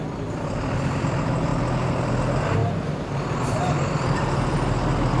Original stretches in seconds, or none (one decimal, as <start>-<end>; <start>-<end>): 0.0-5.2